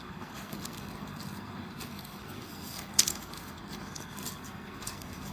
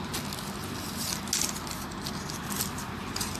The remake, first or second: first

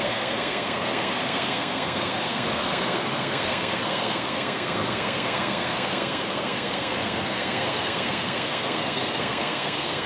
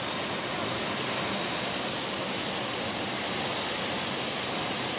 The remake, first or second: first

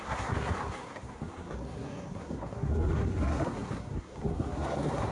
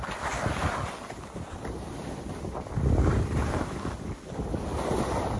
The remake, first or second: first